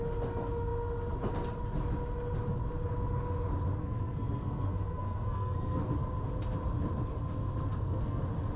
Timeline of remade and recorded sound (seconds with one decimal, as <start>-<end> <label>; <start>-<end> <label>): 0.0-3.8 recorded; 3.8-5.9 remade; 5.9-7.7 recorded; 7.7-8.2 remade; 8.2-8.6 recorded